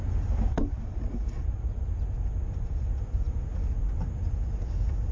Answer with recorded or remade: recorded